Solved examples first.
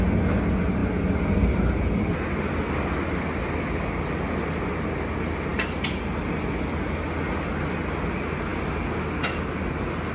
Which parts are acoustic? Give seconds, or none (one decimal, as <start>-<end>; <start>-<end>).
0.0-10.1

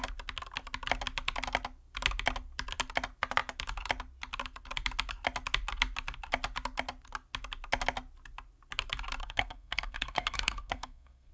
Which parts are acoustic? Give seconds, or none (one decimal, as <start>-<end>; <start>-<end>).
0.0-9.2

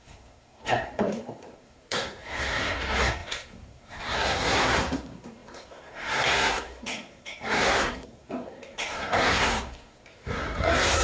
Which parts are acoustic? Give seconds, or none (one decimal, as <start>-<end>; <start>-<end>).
none

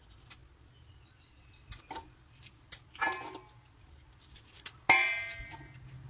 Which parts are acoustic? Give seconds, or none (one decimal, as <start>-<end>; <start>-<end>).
0.0-6.1